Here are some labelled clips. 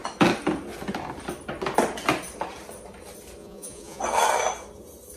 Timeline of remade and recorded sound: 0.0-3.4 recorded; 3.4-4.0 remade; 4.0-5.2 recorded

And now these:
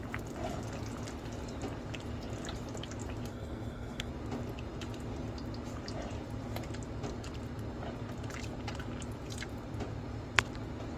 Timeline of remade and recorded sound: 0.0-3.3 recorded; 3.3-4.1 remade; 4.1-11.0 recorded